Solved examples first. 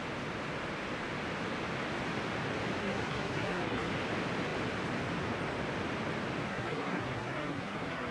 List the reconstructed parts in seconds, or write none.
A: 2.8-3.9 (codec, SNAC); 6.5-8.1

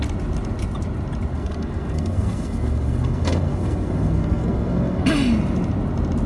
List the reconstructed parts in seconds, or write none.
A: 1.3-5.1 (codec, SNAC)

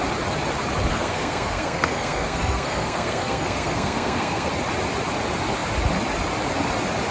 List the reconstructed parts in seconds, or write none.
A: 0.9-4.5 (codec, SNAC)

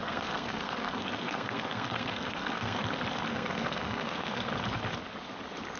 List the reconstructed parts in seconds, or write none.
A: 0.0-2.8 (codec, SNAC); 3.3-4.5

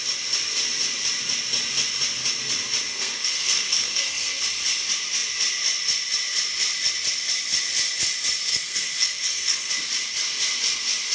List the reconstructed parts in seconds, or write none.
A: 2.9-4.4 (codec, SNAC); 8.5-9.7

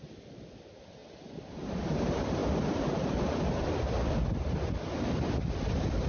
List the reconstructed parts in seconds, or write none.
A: none

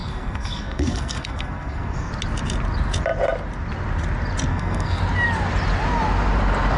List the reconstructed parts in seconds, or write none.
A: 0.0-2.1 (codec, SNAC); 4.5-5.0

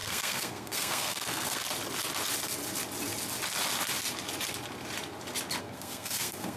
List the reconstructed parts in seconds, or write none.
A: 0.0-1.6 (codec, SNAC); 5.6-6.6